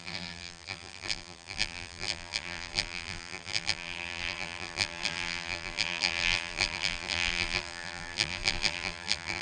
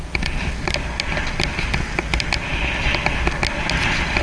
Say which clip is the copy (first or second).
first